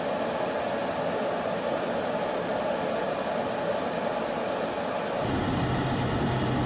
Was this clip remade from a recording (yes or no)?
no